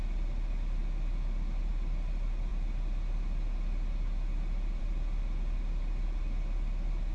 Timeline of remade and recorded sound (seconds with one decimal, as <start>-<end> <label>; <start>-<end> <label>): 0.0-7.1 recorded